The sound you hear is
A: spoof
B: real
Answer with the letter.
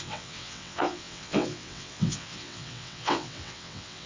A